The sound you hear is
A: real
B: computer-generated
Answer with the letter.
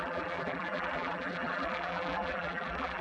B